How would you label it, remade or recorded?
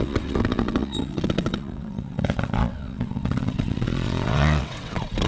remade